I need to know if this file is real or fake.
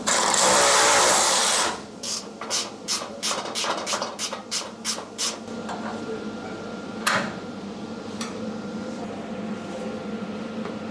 fake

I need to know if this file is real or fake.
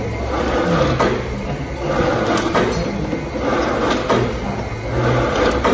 real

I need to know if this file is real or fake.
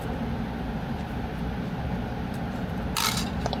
real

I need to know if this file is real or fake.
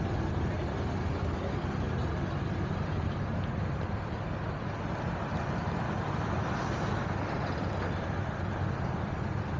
real